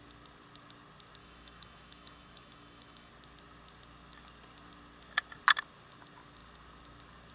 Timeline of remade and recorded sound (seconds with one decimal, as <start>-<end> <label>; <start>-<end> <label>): 0.0-1.2 recorded; 1.2-3.1 remade; 3.1-7.3 recorded